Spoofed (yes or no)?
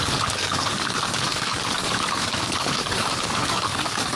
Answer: yes